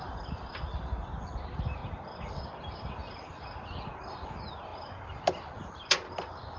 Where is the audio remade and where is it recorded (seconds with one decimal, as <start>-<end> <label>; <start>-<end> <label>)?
0.0-6.6 recorded